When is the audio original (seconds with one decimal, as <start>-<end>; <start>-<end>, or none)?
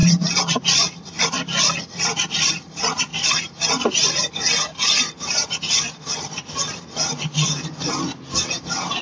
2.5-3.1; 3.9-9.0